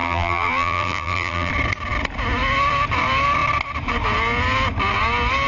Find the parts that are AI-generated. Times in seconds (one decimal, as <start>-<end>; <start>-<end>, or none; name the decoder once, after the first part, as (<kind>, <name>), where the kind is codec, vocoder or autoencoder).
0.0-1.5 (vocoder, BigVGAN v2)